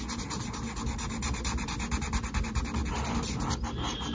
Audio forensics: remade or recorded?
recorded